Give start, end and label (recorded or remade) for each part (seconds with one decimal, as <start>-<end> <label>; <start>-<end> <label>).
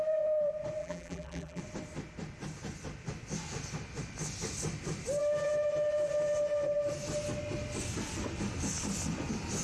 0.0-0.8 recorded; 0.8-1.6 remade; 1.6-9.6 recorded